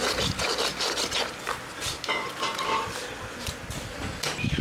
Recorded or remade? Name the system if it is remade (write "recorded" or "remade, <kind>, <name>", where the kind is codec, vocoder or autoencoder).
recorded